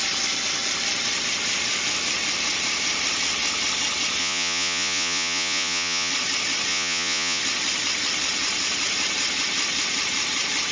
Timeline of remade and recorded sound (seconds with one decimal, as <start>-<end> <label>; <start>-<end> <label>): 0.0-4.2 recorded; 4.2-6.1 remade; 6.1-6.7 recorded; 6.7-7.4 remade; 7.4-10.7 recorded